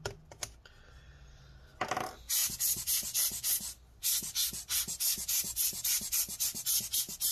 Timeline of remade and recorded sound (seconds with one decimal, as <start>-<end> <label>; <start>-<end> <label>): 0.0-2.4 recorded; 2.4-6.8 remade; 6.8-7.3 recorded